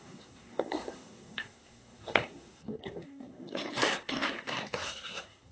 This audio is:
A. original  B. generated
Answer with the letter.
B